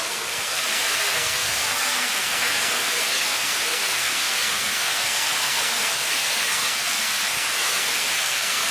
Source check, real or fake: fake